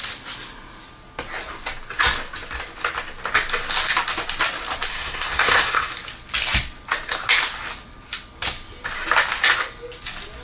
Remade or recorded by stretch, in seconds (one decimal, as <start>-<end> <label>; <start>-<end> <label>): 0.0-4.9 recorded; 4.9-5.9 remade; 5.9-10.4 recorded